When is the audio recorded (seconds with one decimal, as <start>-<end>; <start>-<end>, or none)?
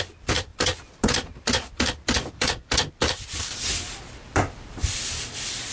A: 0.0-5.7